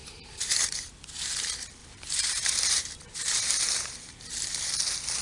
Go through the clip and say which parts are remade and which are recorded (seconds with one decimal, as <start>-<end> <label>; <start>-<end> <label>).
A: 0.0-0.9 remade; 0.9-1.8 recorded; 1.8-4.6 remade; 4.6-5.2 recorded